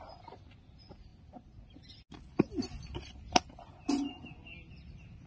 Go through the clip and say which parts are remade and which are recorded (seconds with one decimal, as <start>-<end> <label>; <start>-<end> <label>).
0.0-5.3 recorded